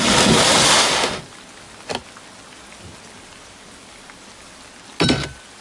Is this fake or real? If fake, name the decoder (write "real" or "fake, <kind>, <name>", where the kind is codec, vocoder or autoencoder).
real